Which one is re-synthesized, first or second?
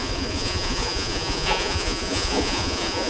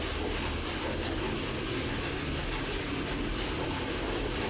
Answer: first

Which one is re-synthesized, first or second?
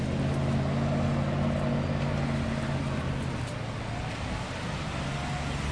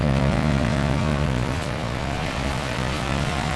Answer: second